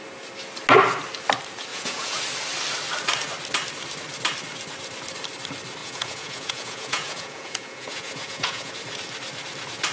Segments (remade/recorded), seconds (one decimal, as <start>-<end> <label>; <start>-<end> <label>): 0.0-1.7 recorded; 1.7-2.2 remade; 2.2-5.8 recorded; 5.8-8.7 remade; 8.7-9.9 recorded